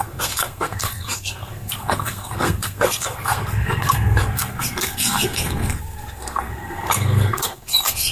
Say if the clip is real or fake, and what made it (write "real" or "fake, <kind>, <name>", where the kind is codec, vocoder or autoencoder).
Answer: fake, codec, SNAC